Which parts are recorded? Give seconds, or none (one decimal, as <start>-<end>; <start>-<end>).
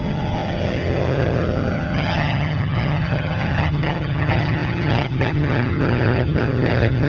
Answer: none